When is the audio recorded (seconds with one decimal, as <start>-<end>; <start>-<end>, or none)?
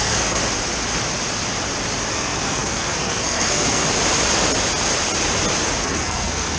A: 0.4-2.1; 3.8-5.8